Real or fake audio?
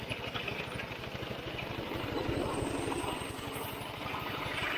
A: fake